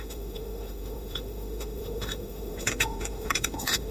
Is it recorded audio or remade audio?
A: remade